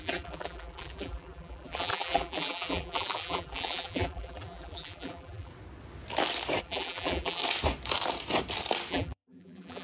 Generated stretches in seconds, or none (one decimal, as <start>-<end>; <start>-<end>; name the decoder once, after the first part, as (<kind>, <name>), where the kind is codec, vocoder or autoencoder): 0.0-5.5 (vocoder, BigVGAN v2); 6.6-7.4; 8.9-9.8